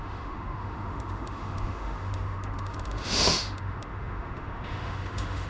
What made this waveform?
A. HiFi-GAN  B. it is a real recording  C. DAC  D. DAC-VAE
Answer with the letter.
D